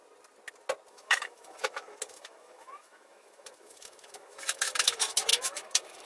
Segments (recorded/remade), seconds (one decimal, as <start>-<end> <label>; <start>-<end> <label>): 0.0-0.9 recorded; 0.9-6.1 remade